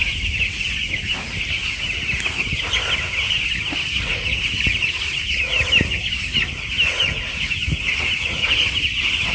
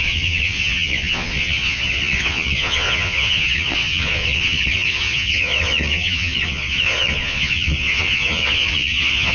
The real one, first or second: first